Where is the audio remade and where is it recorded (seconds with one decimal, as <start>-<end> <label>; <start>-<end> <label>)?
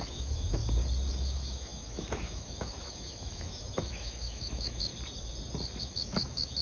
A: 0.0-0.6 remade; 0.6-1.1 recorded; 1.1-4.9 remade; 4.9-5.8 recorded; 5.8-6.6 remade